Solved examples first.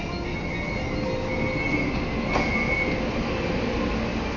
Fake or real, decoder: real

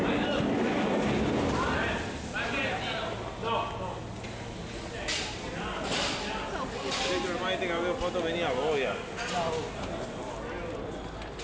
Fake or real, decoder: real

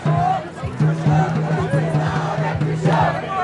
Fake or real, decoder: real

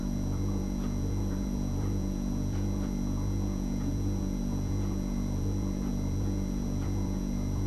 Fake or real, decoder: fake, vocoder, Vocos